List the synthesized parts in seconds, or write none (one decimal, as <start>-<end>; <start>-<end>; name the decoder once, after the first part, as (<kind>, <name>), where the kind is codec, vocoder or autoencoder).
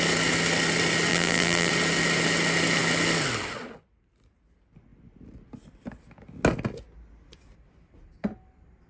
1.1-1.7 (vocoder, BigVGAN v2)